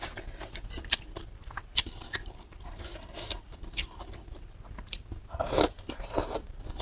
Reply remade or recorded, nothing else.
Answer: remade